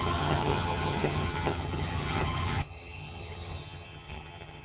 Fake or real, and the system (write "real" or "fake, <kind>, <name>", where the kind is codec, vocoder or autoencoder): fake, vocoder, HiFi-GAN